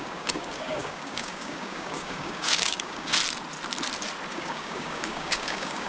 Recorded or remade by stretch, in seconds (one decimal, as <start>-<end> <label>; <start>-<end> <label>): 0.0-3.2 remade; 3.2-4.3 recorded; 4.3-5.9 remade